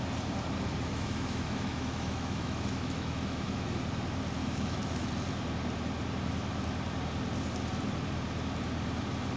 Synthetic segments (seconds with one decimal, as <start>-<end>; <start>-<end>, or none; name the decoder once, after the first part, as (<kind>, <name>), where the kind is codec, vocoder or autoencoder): 0.9-3.8 (autoencoder, DAC-VAE); 4.4-5.1